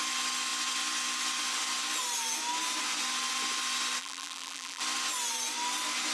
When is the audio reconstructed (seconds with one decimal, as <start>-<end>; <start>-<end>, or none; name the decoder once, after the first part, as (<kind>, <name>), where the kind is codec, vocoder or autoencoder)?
4.0-4.8 (vocoder, BigVGAN v2)